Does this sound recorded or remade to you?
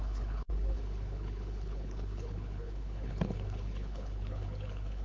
remade